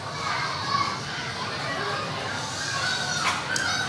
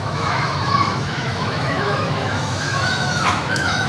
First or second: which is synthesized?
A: second